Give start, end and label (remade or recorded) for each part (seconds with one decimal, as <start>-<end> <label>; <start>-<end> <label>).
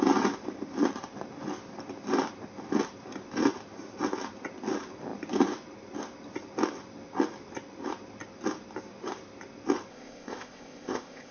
0.0-9.9 recorded; 9.9-11.3 remade